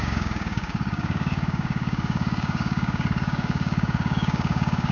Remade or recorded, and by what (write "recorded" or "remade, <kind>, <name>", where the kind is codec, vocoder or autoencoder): remade, codec, DAC